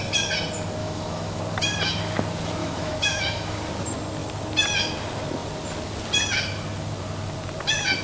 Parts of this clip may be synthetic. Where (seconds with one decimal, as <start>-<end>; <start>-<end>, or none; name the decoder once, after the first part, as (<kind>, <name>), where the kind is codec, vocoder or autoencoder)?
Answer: 0.8-1.4 (autoencoder, DAC-VAE); 2.6-3.6